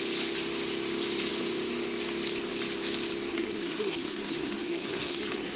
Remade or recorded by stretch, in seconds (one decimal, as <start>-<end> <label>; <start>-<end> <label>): 0.0-3.3 recorded; 3.3-5.6 remade